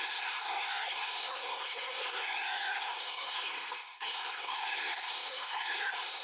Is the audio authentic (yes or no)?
no